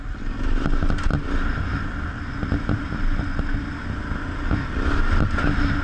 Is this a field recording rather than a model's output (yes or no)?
yes